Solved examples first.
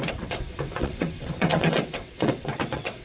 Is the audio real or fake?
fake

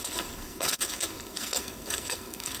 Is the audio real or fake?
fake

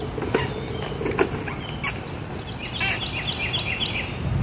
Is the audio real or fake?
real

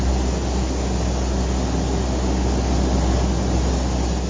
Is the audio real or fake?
real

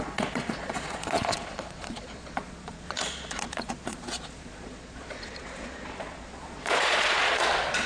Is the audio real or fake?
fake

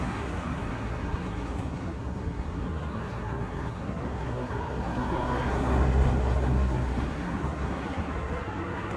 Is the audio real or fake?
fake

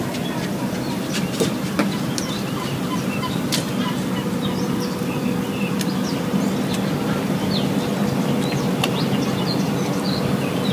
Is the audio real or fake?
real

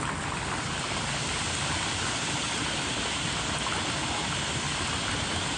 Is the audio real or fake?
real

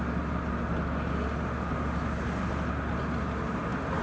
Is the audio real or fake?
real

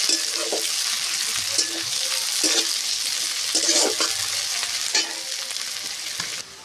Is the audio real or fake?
real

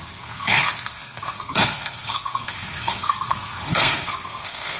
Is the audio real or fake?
fake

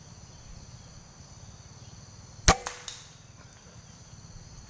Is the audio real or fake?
real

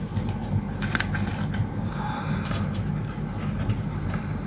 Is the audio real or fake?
real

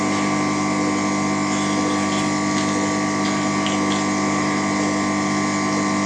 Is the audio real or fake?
real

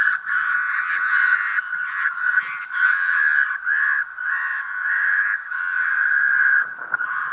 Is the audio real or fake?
real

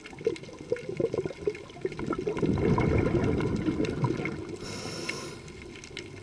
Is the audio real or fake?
real